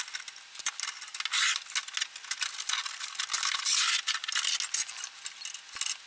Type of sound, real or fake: real